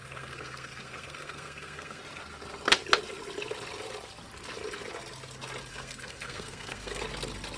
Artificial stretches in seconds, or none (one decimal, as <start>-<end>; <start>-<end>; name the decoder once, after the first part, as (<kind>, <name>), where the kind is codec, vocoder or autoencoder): 0.0-2.0 (codec, SNAC); 5.7-7.0